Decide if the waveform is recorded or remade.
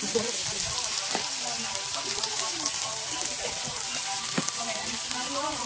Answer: recorded